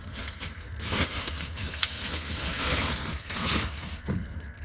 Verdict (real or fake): fake